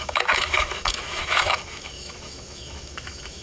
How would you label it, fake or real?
fake